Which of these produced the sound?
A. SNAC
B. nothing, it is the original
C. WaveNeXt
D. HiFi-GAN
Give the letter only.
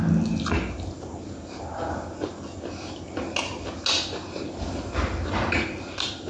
B